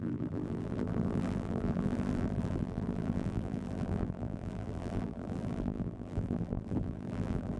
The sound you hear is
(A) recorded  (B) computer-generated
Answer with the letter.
B